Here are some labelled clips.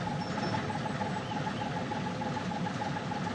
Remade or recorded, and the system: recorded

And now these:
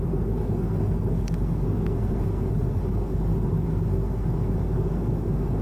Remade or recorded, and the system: remade, codec, SNAC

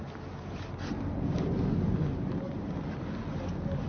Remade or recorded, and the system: recorded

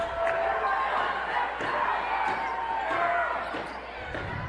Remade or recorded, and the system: recorded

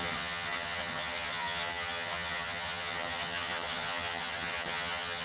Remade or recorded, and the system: remade, vocoder, HiFi-GAN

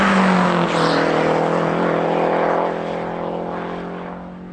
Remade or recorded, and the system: recorded